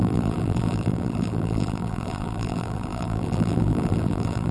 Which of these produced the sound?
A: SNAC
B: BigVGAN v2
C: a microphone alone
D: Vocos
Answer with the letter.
B